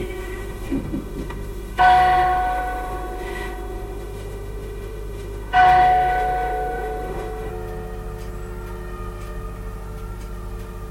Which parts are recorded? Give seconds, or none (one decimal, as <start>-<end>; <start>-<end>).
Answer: 7.5-10.9